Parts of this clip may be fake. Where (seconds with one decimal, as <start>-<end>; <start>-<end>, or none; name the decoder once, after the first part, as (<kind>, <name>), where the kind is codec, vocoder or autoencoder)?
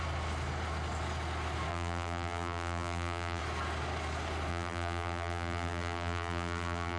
1.7-3.4 (vocoder, BigVGAN v2); 4.5-7.0